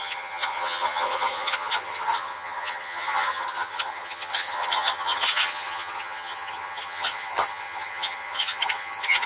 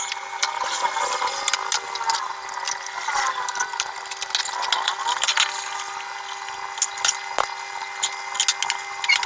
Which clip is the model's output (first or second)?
first